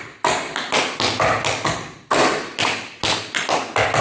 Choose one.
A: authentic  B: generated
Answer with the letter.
A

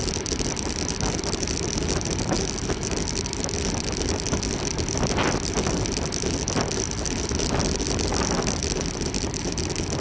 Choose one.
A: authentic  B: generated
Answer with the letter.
A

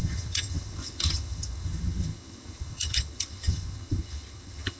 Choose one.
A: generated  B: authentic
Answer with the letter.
A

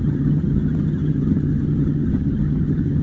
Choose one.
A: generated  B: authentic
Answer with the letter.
A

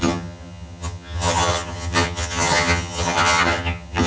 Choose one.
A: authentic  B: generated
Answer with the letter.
B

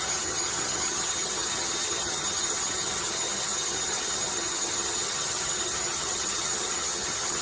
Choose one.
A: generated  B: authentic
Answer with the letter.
A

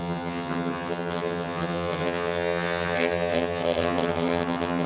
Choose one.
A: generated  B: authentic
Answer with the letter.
A